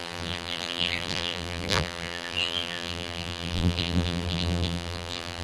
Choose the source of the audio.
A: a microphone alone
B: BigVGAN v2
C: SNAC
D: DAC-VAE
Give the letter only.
B